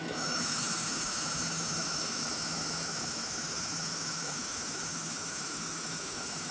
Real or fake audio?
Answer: fake